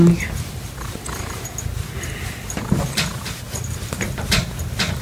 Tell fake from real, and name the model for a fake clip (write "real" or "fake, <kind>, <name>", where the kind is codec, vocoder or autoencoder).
real